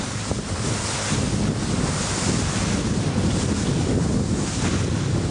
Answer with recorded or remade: recorded